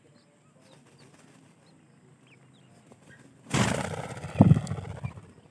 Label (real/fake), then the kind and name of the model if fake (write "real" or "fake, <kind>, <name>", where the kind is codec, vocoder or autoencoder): real